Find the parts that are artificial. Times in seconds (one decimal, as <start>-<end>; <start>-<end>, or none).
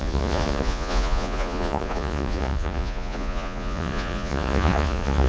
0.0-5.3